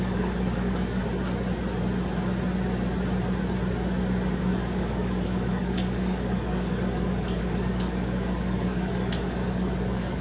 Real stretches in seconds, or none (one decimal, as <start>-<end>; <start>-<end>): 1.0-4.4